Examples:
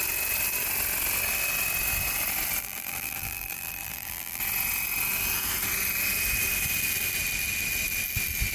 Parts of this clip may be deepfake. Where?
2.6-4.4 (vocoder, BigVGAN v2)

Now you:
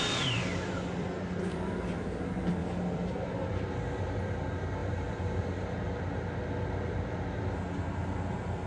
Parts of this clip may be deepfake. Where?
0.5-2.2 (vocoder, BigVGAN v2); 2.6-4.2; 4.8-6.0

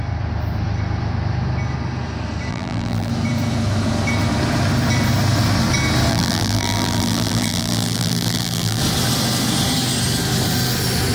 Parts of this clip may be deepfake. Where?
2.5-3.1 (vocoder, BigVGAN v2); 6.1-8.8

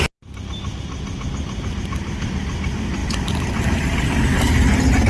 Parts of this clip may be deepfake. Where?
none